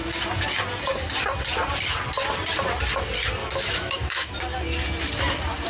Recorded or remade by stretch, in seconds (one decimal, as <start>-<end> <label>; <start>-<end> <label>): 0.0-3.4 recorded; 3.4-4.3 remade; 4.3-5.7 recorded